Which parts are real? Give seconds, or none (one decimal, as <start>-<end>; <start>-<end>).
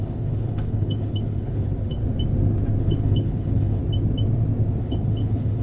2.0-2.8; 3.8-4.8